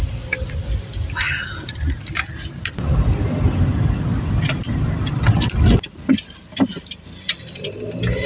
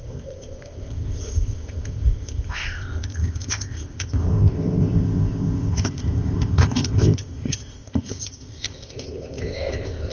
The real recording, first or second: first